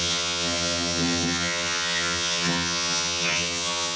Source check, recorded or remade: remade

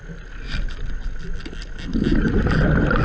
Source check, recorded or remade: recorded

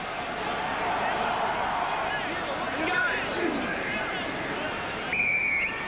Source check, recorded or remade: recorded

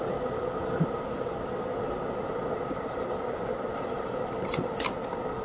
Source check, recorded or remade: recorded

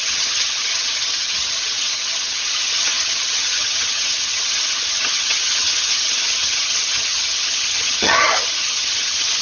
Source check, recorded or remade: remade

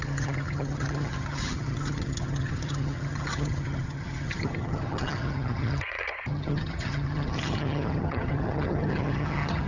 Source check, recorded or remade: remade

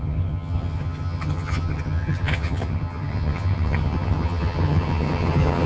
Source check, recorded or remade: remade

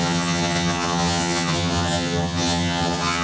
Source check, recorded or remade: remade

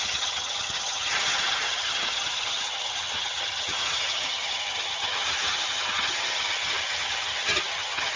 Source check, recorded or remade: remade